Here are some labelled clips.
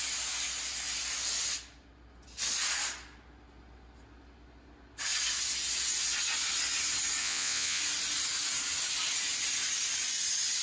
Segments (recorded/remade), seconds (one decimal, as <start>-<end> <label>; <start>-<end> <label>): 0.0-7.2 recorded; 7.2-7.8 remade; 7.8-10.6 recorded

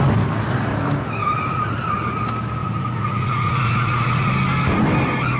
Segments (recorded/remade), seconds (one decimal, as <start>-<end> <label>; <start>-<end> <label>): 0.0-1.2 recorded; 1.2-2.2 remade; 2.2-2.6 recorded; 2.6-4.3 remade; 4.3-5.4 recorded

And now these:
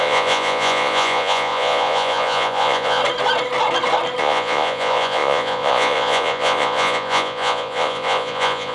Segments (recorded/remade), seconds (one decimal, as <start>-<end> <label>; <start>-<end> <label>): 0.0-3.0 remade; 3.0-4.2 recorded; 4.2-8.7 remade

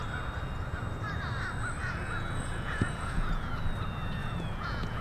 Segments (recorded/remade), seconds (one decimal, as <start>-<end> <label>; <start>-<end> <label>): 0.0-1.8 recorded; 1.8-3.5 remade; 3.5-4.2 recorded; 4.2-5.0 remade

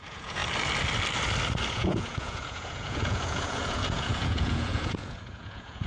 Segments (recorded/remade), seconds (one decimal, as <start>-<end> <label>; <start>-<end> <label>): 0.0-0.4 remade; 0.4-1.7 recorded; 1.7-5.9 remade